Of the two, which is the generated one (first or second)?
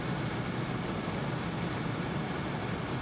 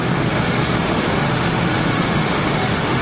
second